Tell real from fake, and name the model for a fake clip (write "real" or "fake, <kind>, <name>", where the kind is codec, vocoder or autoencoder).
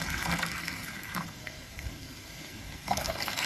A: fake, codec, SNAC